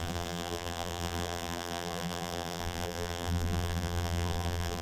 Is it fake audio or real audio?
fake